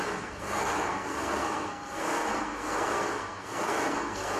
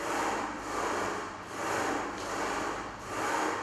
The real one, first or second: second